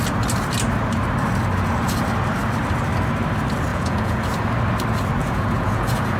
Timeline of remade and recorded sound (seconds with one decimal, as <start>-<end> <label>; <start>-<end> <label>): 0.0-3.7 recorded; 3.7-4.2 remade; 4.2-5.2 recorded; 5.2-6.2 remade